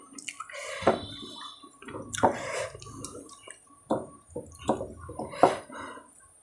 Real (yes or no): yes